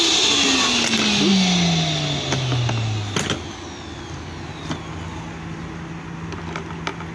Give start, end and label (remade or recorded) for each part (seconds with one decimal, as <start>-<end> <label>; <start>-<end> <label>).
0.0-7.1 recorded